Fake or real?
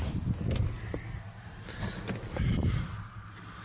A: real